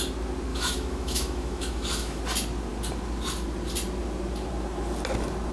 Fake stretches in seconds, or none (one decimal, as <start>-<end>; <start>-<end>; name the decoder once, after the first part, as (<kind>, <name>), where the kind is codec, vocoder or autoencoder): 0.5-2.2 (autoencoder, DAC-VAE)